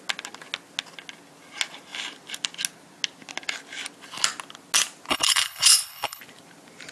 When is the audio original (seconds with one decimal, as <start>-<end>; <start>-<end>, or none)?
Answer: 0.0-5.1; 6.2-6.9